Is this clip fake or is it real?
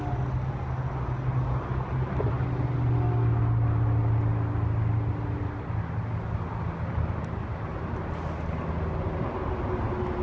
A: real